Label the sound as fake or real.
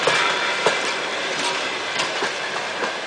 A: fake